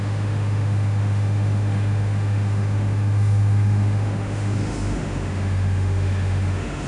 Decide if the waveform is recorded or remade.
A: remade